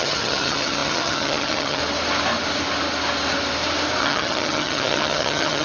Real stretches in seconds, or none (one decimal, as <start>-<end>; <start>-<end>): 1.8-4.0